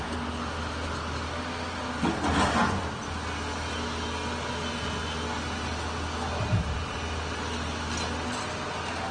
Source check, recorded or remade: recorded